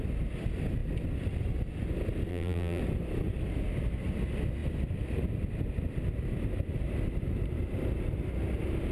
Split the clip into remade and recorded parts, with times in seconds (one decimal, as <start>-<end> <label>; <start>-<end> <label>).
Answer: 0.0-2.3 recorded; 2.3-2.8 remade; 2.8-8.9 recorded